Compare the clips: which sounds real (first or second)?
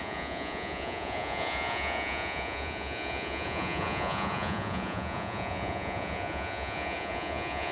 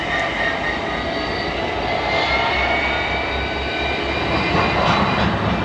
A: second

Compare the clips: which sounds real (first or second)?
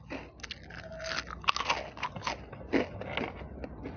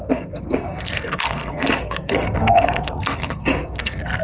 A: first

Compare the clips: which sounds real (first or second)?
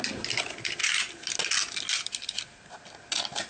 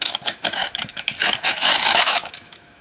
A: first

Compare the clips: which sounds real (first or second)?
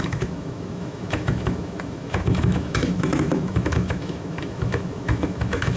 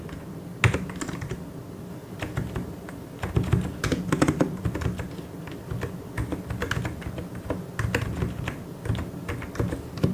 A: second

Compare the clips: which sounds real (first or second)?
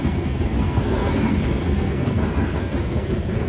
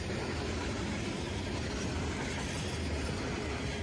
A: second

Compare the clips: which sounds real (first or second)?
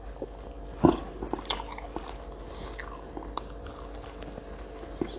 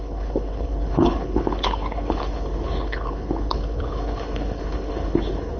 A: first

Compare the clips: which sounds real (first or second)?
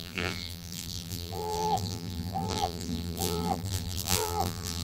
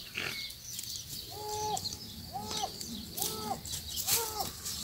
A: second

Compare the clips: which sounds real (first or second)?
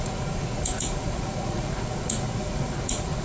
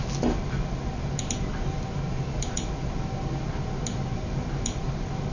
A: second